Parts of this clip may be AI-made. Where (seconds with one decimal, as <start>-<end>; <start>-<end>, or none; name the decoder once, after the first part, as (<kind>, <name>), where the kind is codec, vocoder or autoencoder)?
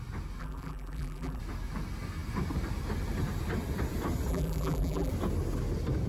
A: 0.4-1.4 (vocoder, BigVGAN v2); 4.3-5.1